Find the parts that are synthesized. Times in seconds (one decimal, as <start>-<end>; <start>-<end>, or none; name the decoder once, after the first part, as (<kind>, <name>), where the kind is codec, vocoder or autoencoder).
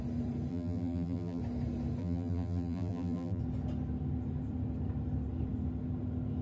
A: 0.5-1.4 (vocoder, BigVGAN v2); 2.0-3.4